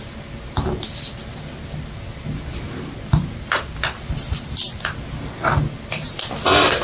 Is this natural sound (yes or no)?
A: yes